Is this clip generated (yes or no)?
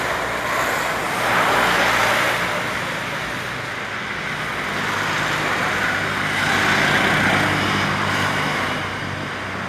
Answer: no